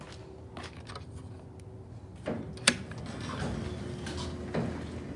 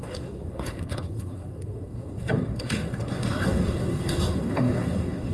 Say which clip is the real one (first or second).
first